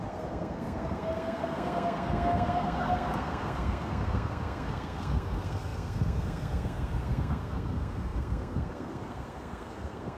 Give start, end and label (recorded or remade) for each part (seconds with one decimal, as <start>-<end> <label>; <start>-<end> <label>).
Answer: 0.0-10.2 remade